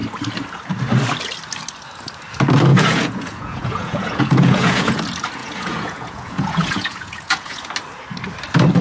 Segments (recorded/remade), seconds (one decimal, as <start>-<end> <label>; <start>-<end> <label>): 0.0-2.7 recorded; 2.7-5.0 remade; 5.0-5.4 recorded; 5.4-7.7 remade; 7.7-8.8 recorded